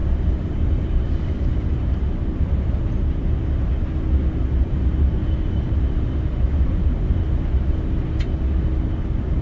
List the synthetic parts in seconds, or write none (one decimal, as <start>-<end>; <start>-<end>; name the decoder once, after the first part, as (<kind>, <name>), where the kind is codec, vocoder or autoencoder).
0.0-3.7 (vocoder, BigVGAN v2); 4.6-6.9

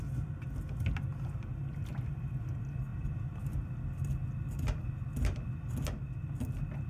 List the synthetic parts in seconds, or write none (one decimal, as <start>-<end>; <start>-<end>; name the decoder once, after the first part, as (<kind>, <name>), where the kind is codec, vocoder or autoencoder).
none

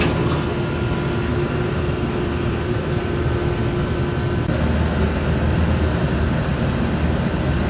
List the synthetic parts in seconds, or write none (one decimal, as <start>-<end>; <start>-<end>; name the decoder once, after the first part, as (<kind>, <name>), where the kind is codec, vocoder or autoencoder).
1.3-3.3 (vocoder, BigVGAN v2); 5.9-6.9